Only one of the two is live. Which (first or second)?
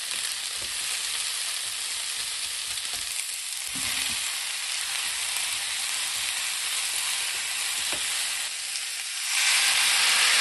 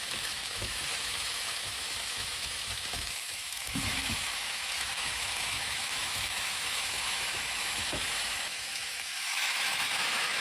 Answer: first